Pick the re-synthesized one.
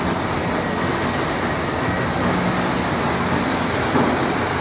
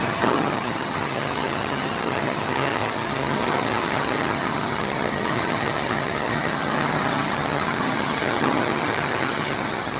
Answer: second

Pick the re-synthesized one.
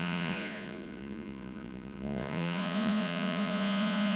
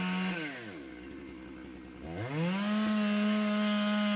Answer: first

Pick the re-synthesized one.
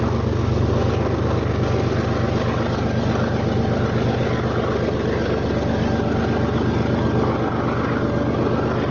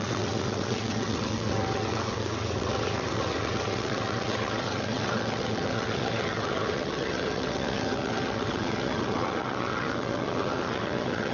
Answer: second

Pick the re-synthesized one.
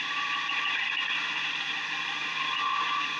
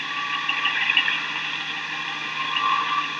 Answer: first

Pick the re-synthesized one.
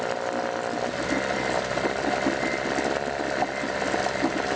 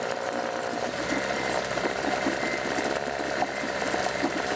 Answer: second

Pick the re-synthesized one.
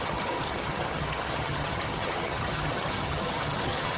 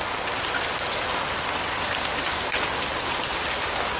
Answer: first